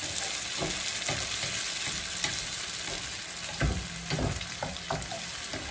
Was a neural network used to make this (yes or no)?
no